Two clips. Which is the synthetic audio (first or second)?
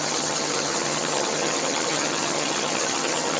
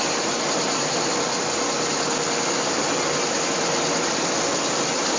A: first